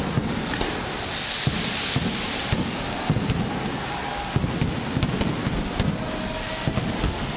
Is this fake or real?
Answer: real